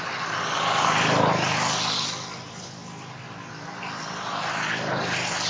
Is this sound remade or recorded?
recorded